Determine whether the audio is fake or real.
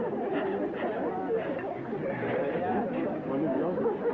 real